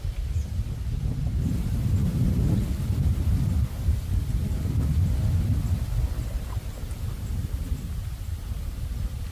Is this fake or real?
real